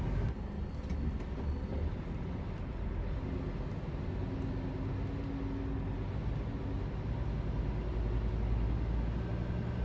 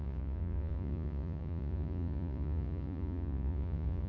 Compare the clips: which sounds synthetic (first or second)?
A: second